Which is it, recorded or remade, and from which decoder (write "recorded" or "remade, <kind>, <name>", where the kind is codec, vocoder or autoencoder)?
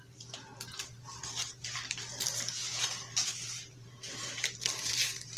recorded